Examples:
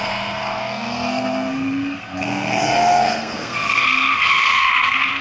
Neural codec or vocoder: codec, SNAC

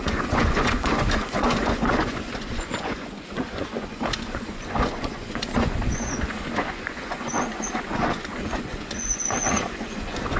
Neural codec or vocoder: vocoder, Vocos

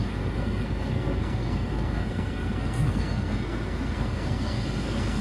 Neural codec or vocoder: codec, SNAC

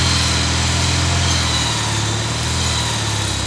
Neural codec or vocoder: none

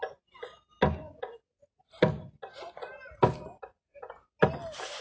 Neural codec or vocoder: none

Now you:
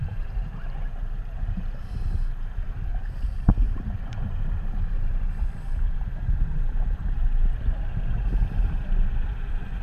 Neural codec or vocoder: vocoder, BigVGAN v2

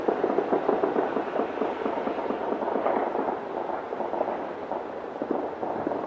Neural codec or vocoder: none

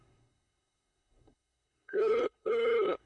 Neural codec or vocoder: codec, SNAC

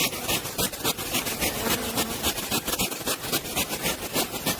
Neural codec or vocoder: none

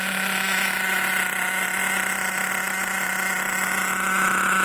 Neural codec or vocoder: none